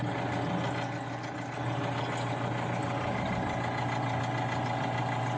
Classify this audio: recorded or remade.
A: recorded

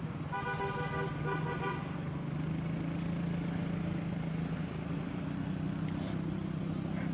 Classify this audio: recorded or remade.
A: recorded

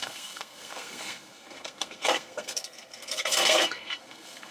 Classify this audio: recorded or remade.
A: remade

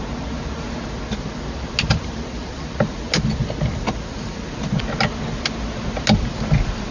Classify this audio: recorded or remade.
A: recorded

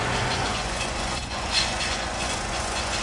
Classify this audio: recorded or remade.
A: remade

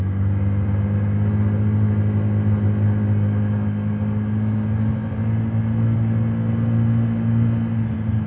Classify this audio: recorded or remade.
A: recorded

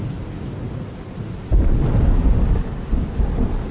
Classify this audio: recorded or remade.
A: recorded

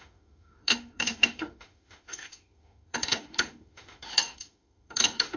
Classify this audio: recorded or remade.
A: remade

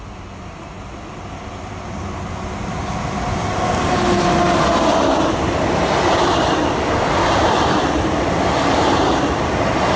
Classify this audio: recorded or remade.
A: recorded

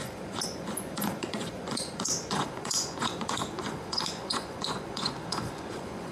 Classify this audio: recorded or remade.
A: remade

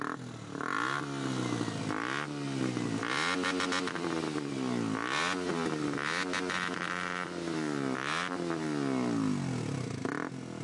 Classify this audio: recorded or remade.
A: recorded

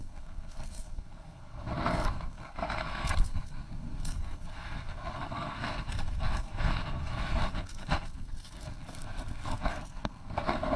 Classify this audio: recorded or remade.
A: remade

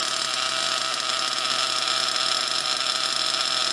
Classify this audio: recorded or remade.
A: recorded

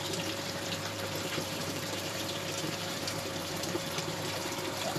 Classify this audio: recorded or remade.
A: remade